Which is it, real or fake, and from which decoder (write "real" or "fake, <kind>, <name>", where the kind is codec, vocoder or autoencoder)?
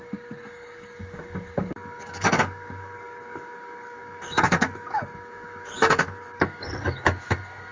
fake, codec, DAC